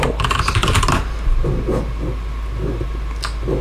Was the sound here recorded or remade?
recorded